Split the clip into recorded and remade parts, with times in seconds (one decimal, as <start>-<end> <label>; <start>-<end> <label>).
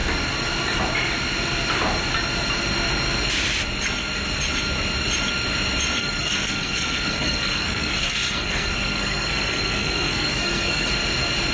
0.0-6.0 recorded; 6.0-10.9 remade; 10.9-11.5 recorded